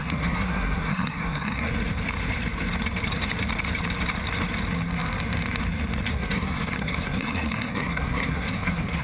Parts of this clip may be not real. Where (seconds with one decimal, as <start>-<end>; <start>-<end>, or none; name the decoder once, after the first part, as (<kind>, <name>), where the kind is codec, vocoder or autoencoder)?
0.0-1.7 (codec, SNAC); 6.1-9.0